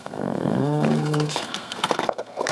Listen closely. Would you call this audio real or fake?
fake